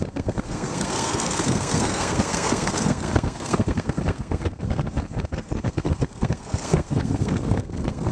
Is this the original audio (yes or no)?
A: no